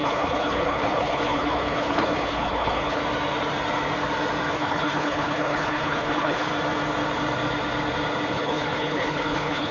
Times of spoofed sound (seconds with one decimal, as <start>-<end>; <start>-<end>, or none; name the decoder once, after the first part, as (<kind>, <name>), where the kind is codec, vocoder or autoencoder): 0.0-3.0 (codec, HILCodec); 4.5-6.5; 8.3-9.7